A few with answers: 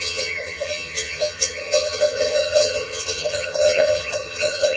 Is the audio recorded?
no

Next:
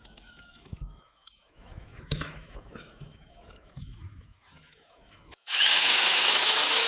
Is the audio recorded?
no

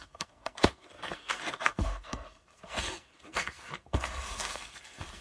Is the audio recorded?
no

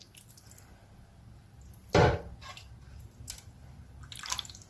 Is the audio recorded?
yes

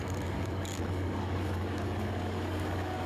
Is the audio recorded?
no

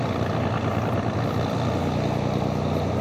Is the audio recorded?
yes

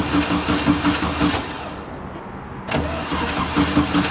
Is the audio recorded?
yes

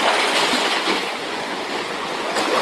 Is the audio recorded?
no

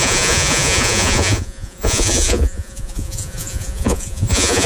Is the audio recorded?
no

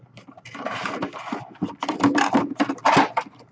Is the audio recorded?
yes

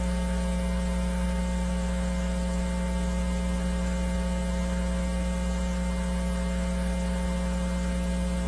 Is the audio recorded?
yes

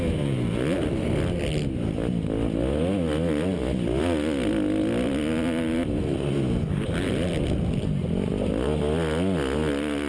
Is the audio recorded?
yes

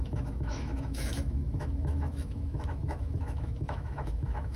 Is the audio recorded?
no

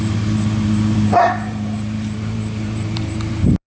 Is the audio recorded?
no